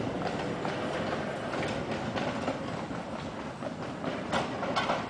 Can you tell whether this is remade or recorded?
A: remade